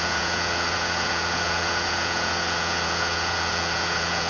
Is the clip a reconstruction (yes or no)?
yes